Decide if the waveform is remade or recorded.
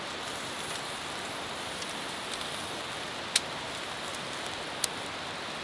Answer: recorded